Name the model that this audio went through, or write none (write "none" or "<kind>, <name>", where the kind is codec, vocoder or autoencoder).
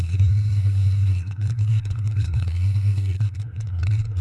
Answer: codec, SNAC